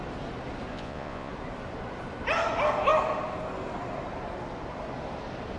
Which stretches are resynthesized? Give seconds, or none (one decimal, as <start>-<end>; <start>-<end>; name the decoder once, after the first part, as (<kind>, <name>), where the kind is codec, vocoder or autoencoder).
0.7-1.3 (vocoder, Vocos)